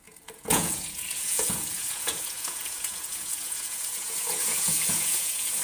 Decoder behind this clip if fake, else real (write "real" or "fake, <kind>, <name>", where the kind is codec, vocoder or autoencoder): fake, vocoder, Vocos